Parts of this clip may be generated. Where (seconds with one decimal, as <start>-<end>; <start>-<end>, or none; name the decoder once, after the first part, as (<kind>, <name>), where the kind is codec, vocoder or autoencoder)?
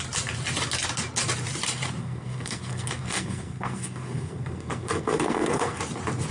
2.0-5.8 (codec, SNAC)